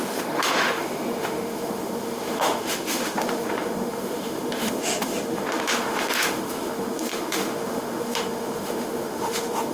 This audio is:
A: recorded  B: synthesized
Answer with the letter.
B